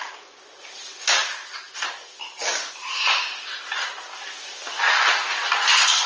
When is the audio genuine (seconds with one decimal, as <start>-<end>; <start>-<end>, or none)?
0.0-6.1